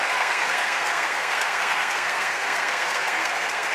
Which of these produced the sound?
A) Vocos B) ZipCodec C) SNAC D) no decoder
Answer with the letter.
C